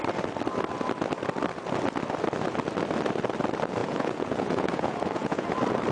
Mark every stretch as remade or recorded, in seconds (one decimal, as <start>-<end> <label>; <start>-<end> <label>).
0.0-3.8 recorded; 3.8-5.5 remade; 5.5-5.9 recorded